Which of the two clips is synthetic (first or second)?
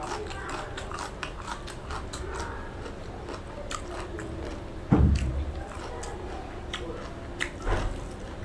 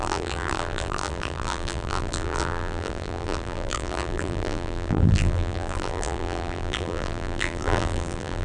second